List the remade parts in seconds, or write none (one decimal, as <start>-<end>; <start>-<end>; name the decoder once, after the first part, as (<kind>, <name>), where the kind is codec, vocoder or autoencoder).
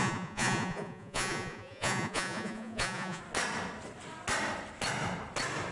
0.0-3.2 (vocoder, Vocos)